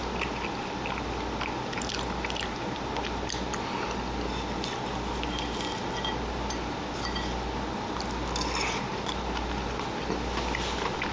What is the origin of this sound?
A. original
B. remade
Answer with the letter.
A